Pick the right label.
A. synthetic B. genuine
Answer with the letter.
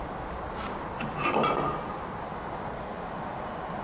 B